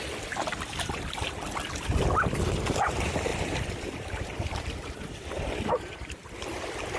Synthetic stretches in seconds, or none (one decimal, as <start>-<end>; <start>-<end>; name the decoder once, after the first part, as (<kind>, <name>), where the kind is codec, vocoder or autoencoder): 3.3-5.7 (vocoder, BigVGAN v2)